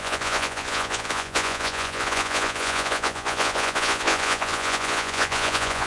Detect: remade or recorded remade